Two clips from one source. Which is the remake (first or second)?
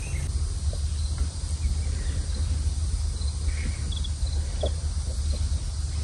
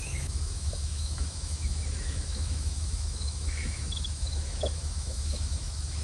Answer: second